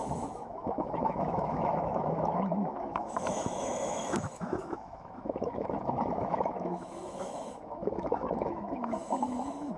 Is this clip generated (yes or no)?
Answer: yes